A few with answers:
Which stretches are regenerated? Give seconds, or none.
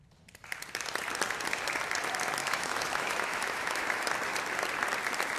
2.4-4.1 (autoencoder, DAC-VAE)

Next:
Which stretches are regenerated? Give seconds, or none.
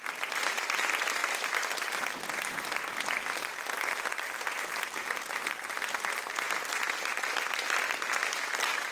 none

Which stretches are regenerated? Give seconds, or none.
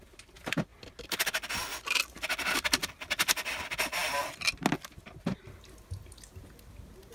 none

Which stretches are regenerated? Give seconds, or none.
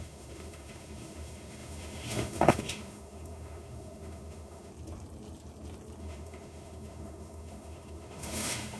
0.0-4.7 (autoencoder, DAC-VAE); 6.0-8.8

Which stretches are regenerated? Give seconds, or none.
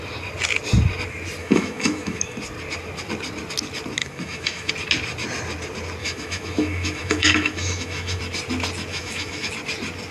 1.4-2.4 (autoencoder, DAC-VAE); 4.0-4.7; 6.0-8.2; 8.9-9.5